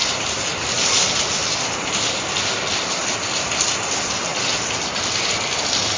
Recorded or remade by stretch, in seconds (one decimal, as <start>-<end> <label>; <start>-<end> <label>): 0.0-6.0 recorded